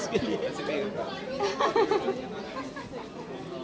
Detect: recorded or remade recorded